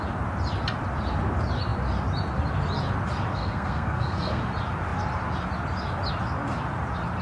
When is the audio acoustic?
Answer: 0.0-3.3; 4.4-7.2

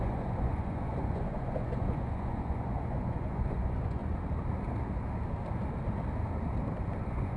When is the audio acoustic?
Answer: 4.0-7.0

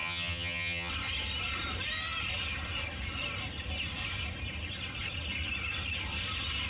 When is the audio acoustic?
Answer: 0.9-6.7

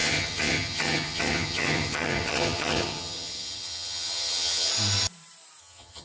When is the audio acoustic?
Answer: 4.7-5.6

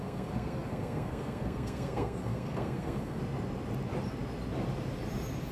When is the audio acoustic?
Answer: 3.2-5.5